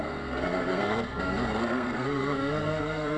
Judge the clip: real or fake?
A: fake